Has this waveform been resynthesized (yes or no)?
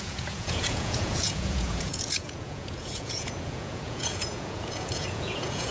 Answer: yes